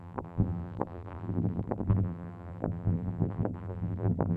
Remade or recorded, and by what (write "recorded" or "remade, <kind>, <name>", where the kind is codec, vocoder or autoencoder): remade, vocoder, BigVGAN v2